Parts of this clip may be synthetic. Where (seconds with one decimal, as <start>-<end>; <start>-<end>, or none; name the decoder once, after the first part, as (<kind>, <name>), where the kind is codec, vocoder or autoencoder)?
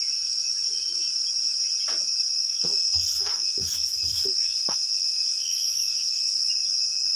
2.4-6.5 (codec, SNAC)